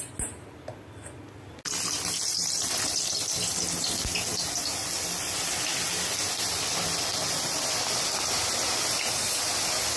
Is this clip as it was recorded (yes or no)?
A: yes